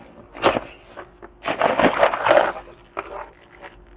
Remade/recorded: recorded